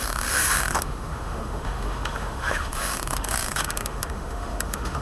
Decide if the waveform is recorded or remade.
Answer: remade